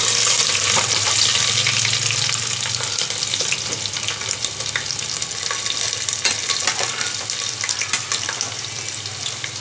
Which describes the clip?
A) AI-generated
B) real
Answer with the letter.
B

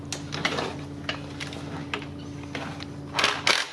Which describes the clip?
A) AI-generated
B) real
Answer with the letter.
B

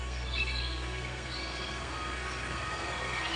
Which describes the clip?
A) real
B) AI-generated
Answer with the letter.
B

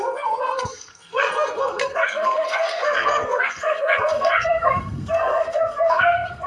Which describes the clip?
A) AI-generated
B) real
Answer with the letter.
A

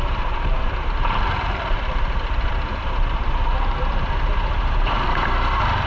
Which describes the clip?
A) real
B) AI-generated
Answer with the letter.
B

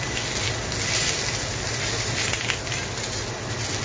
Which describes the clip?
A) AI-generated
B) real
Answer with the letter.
B